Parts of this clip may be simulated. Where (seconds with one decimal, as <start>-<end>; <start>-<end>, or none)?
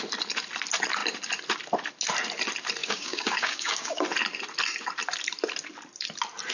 2.8-4.0